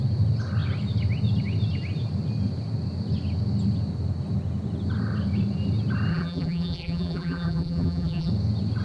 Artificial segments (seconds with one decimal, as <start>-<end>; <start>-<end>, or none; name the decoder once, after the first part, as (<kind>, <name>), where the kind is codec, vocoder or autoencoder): 6.1-8.3 (vocoder, BigVGAN v2)